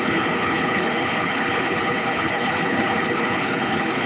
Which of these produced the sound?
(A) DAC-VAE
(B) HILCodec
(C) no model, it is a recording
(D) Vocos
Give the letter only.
B